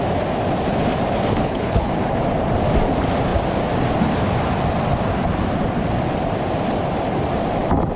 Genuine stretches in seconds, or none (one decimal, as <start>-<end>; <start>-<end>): 0.0-1.3; 1.9-8.0